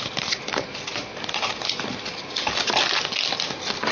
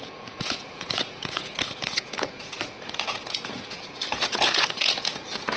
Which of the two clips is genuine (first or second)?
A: first